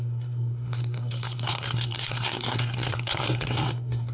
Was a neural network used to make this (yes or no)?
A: yes